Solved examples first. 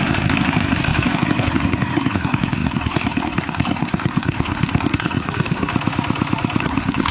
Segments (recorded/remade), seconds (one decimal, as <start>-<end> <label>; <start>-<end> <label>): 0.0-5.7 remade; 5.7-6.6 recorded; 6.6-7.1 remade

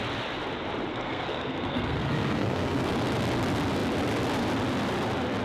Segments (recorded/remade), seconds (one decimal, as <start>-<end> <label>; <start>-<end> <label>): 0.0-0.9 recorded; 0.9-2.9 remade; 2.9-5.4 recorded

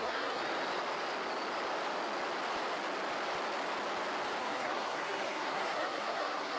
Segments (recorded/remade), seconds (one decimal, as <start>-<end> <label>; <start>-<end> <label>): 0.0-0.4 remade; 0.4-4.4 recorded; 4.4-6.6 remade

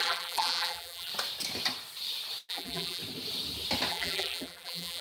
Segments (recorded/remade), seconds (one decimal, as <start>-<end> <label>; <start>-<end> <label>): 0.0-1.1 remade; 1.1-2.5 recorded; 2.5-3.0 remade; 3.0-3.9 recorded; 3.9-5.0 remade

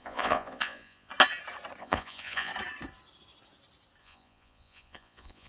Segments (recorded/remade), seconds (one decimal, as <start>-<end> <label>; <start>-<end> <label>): 0.0-1.1 remade; 1.1-1.8 recorded; 1.8-2.5 remade; 2.5-4.0 recorded; 4.0-5.5 remade

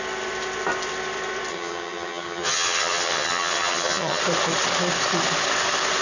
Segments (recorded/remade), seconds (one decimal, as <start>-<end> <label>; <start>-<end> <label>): 0.0-1.5 recorded; 1.5-4.2 remade; 4.2-6.0 recorded

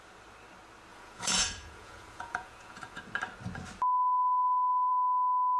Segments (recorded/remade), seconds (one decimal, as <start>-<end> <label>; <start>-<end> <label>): 0.0-0.9 recorded; 0.9-3.0 remade; 3.0-5.6 recorded

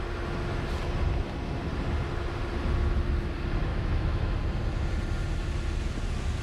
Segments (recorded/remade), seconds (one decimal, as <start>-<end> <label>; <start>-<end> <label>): 0.0-3.7 recorded; 3.7-4.4 remade; 4.4-6.4 recorded